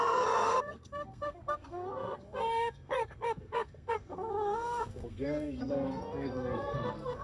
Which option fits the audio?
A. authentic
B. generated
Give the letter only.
B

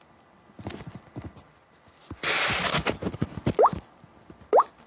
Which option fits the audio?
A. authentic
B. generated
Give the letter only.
A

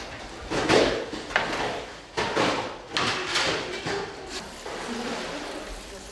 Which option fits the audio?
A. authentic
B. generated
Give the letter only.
A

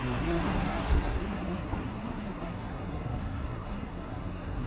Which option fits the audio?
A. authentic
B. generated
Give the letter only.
B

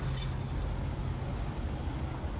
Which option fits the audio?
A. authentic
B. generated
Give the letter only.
A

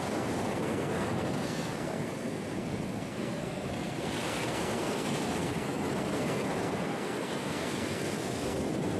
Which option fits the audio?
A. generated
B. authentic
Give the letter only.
A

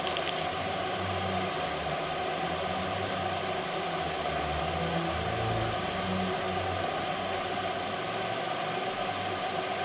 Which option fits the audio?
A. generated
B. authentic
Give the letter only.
B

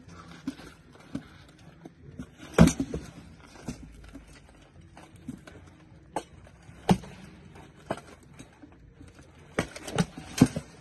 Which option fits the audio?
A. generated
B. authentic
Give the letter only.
B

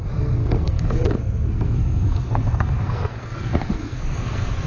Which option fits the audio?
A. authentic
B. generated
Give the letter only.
B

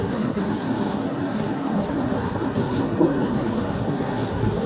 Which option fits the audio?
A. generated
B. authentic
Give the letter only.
A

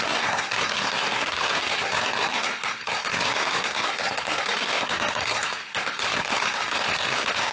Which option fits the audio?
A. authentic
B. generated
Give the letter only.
B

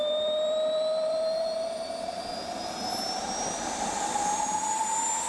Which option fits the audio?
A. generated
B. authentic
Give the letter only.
B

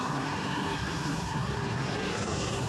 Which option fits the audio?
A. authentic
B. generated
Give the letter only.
B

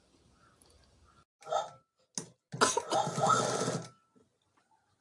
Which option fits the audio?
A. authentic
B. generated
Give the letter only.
A